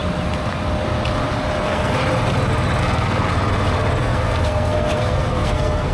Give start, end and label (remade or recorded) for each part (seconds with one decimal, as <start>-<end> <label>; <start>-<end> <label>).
0.0-1.6 recorded; 1.6-2.0 remade; 2.0-2.8 recorded; 2.8-3.3 remade; 3.3-4.0 recorded; 4.0-5.9 remade